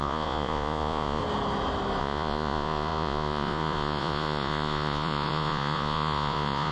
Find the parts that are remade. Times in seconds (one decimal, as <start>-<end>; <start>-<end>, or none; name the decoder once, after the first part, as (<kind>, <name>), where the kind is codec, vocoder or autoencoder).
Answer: 0.0-1.2 (vocoder, Vocos); 2.0-6.7